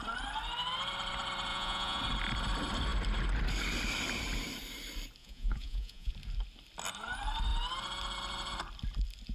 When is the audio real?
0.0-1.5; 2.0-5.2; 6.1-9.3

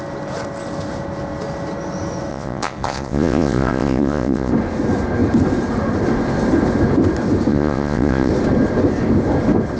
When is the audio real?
0.0-2.3; 4.5-7.5; 8.3-9.8

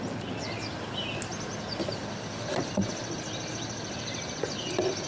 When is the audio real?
0.0-5.1

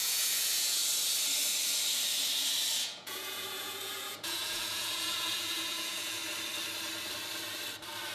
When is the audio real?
0.8-2.8; 6.2-8.1

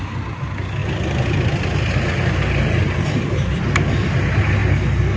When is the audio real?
0.0-5.2

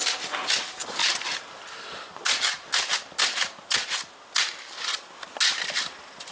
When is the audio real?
0.0-6.3

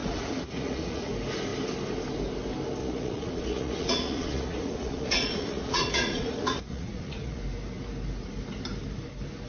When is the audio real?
1.1-2.8; 7.4-9.5

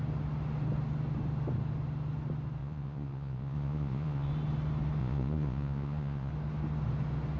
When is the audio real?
0.0-2.6; 4.3-5.0; 6.3-7.4